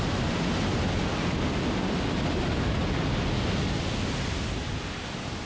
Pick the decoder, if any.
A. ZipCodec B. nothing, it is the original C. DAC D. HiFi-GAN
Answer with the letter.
B